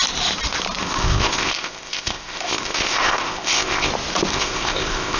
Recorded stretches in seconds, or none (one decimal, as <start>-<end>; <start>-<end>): 0.0-0.8; 3.9-4.3